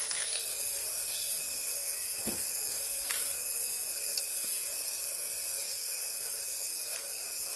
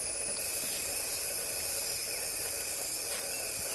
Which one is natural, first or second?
second